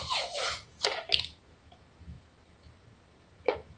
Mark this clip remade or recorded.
remade